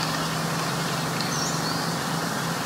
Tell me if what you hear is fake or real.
real